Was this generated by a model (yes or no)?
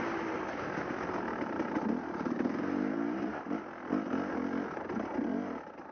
no